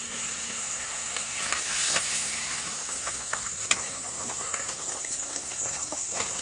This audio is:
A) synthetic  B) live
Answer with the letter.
A